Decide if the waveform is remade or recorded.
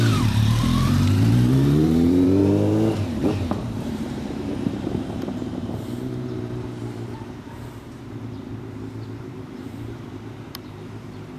remade